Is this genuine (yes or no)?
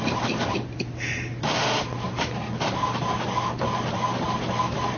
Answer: yes